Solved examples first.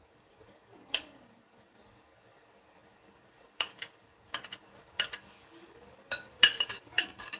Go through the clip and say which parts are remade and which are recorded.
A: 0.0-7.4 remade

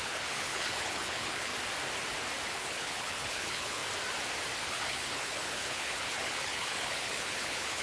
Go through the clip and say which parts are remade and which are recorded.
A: 0.0-1.5 remade; 1.5-2.5 recorded; 2.5-3.8 remade; 3.8-4.6 recorded; 4.6-7.8 remade

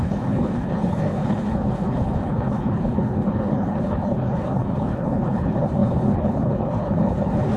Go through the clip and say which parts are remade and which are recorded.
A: 0.0-7.6 remade

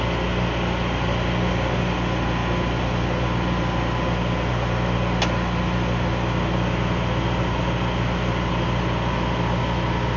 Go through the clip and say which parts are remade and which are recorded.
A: 0.0-10.2 recorded

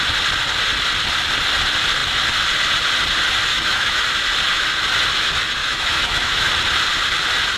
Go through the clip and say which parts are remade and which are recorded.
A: 0.0-3.5 recorded; 3.5-4.0 remade; 4.0-5.6 recorded; 5.6-6.5 remade; 6.5-7.6 recorded

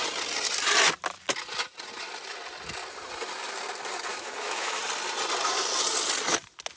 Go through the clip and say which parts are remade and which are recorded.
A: 0.0-4.1 recorded; 4.1-4.8 remade; 4.8-6.8 recorded